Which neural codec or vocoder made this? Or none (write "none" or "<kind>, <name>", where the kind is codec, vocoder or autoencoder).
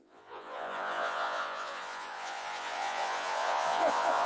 vocoder, Vocos